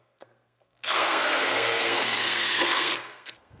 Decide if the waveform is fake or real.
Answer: fake